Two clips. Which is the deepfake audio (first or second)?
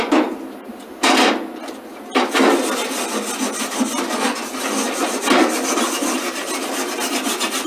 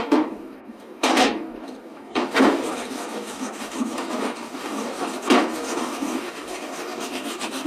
second